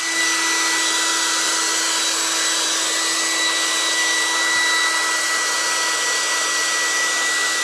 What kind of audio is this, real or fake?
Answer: real